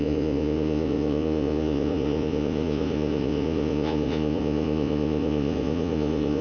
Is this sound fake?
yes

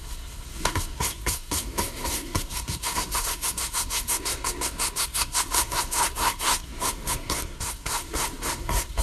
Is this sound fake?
yes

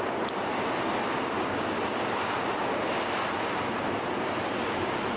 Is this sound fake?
no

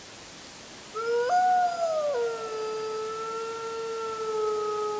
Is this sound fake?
no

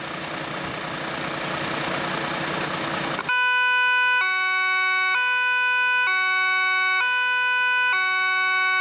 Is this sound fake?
no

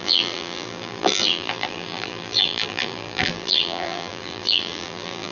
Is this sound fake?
yes